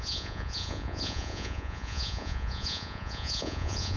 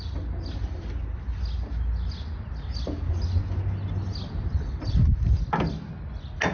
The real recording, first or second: second